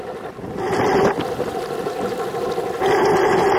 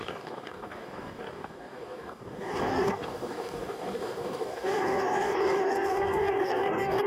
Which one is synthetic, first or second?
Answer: second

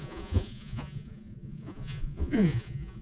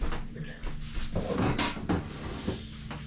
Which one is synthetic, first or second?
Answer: first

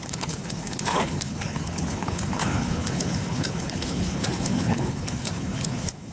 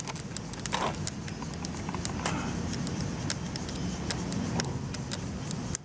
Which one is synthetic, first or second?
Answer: first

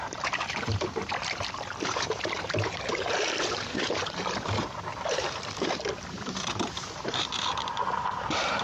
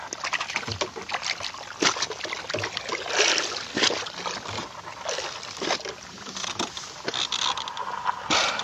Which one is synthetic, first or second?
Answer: first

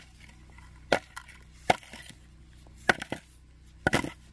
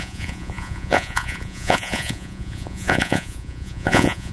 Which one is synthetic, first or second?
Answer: second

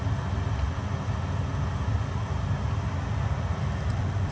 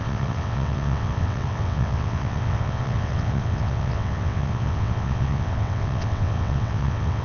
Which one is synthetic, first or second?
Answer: second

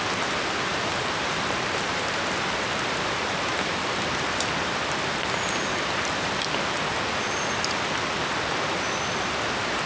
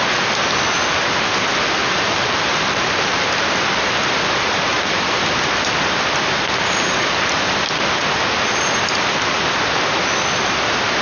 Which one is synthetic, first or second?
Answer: first